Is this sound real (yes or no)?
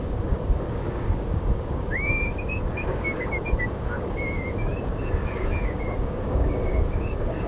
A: no